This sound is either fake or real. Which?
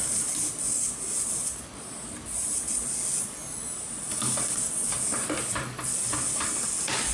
real